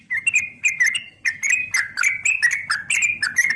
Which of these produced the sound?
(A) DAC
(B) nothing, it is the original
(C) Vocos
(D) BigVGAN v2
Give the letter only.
B